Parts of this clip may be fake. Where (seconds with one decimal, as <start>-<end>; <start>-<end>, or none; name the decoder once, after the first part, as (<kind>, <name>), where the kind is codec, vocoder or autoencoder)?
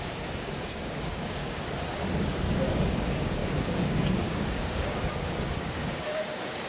0.0-1.4 (codec, DAC); 2.4-6.7